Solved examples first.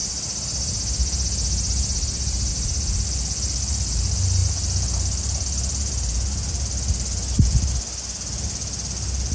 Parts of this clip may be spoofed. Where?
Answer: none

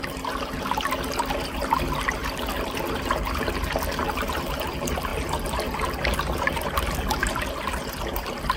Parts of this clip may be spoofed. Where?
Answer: none

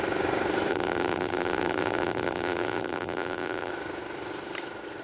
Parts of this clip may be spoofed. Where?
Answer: 0.7-3.7 (vocoder, BigVGAN v2)

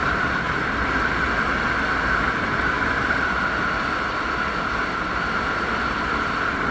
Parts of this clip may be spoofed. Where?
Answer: 0.0-0.9 (vocoder, BigVGAN v2)

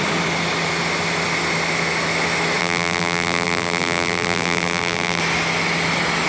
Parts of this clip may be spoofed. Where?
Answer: 2.6-5.2 (vocoder, BigVGAN v2)

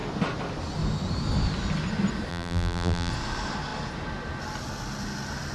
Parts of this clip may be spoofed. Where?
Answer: 2.3-3.1 (vocoder, BigVGAN v2)